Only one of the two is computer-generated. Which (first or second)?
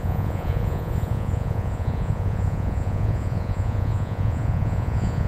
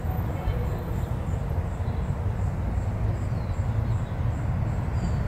first